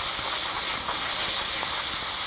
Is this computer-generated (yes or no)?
no